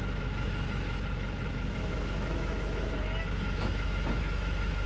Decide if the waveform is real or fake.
fake